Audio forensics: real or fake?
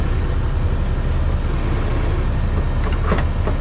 real